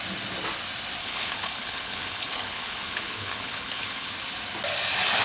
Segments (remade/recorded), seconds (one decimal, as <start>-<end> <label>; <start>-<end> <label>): 0.0-1.0 recorded; 1.0-4.1 remade; 4.1-5.2 recorded